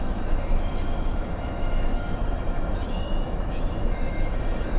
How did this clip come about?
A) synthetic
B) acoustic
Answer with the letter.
A